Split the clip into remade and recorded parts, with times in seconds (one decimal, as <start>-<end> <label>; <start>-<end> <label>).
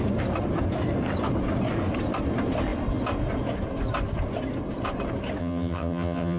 0.0-5.4 recorded; 5.4-6.4 remade